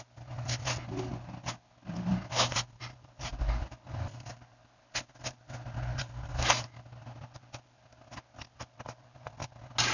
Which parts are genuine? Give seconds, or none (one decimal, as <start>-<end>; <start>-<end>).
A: 0.0-9.9